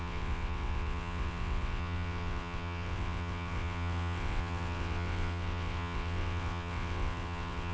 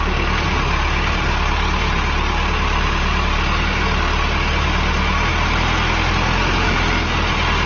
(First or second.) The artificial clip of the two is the first